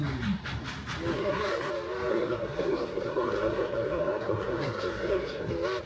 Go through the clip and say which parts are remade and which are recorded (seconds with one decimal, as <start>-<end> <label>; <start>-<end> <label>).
0.0-1.1 recorded; 1.1-1.7 remade; 1.7-2.1 recorded; 2.1-5.5 remade; 5.5-5.9 recorded